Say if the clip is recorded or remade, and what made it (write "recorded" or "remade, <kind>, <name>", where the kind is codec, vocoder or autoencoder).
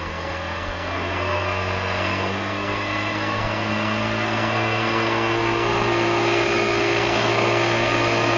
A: remade, codec, SNAC